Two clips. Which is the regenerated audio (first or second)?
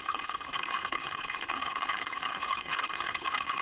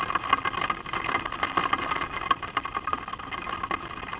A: first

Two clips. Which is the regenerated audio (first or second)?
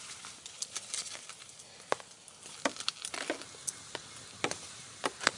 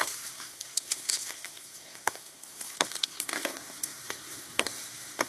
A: second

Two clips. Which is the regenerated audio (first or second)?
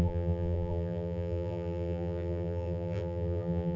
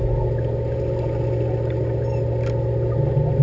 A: first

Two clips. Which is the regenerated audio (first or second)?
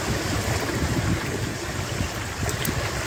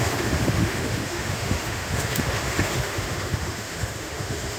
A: second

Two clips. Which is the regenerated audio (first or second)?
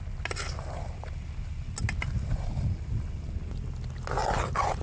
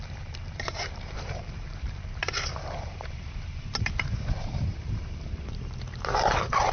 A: second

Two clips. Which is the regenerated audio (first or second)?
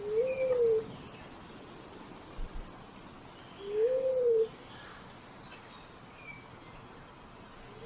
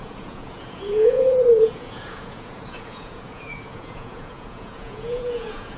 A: second